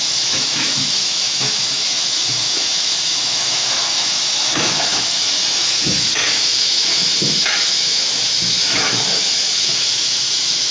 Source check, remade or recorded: remade